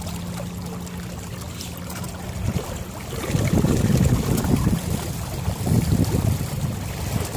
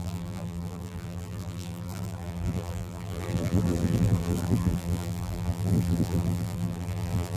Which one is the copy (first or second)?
second